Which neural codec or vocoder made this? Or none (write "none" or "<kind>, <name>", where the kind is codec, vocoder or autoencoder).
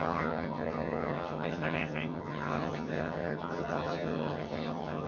vocoder, HiFi-GAN